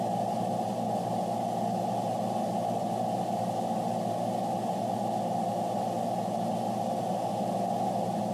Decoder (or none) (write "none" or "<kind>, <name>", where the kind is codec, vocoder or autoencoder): none